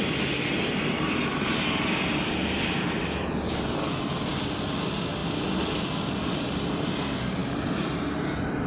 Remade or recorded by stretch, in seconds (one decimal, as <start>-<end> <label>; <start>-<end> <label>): 0.0-8.7 recorded